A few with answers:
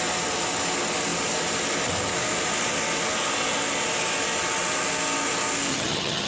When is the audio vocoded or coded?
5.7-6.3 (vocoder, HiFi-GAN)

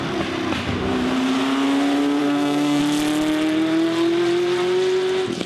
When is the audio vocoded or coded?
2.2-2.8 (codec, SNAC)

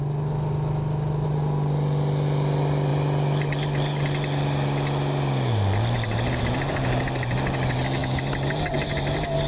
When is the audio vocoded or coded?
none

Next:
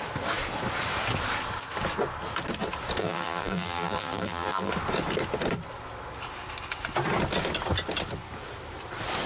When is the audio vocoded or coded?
3.0-4.7 (vocoder, BigVGAN v2)

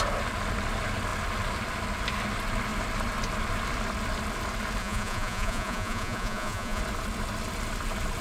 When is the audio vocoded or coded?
4.8-6.8 (vocoder, Vocos)